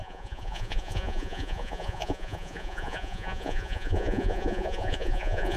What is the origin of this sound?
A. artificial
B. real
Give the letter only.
A